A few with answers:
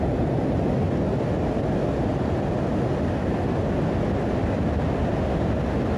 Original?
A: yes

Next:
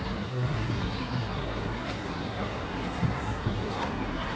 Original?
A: no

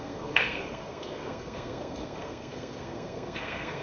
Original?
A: no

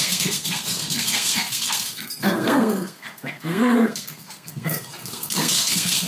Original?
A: no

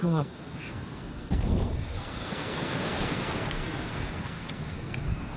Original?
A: no